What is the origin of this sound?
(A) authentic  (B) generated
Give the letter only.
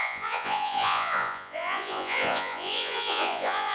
B